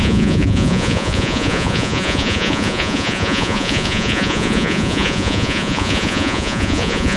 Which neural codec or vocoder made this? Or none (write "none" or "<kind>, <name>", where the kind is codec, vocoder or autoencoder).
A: vocoder, Vocos